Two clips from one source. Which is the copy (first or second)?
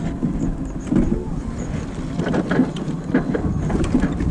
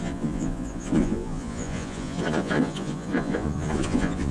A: second